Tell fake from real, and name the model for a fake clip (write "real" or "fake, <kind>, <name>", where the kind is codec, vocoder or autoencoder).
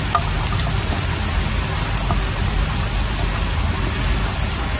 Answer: real